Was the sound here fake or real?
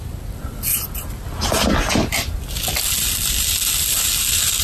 real